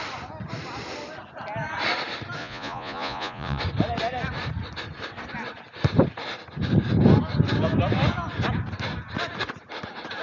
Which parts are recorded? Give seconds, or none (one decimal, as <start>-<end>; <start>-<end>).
0.0-2.4; 3.6-10.2